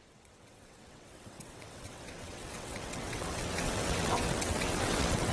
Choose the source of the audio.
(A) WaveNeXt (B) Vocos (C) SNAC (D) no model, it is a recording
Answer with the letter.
A